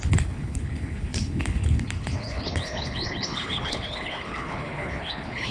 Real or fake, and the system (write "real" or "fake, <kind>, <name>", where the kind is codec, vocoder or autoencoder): fake, codec, HILCodec